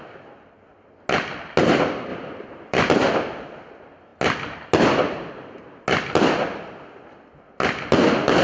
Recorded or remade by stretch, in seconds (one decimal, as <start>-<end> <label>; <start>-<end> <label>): 0.0-2.1 recorded; 2.1-2.9 remade; 2.9-8.4 recorded